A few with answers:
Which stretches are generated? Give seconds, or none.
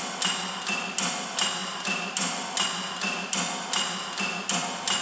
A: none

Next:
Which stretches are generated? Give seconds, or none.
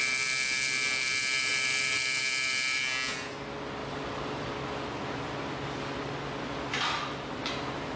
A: 3.8-4.5 (vocoder, BigVGAN v2)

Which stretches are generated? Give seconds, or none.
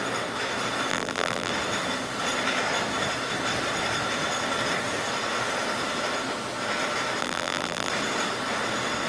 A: 0.9-1.5 (vocoder, BigVGAN v2); 7.2-7.9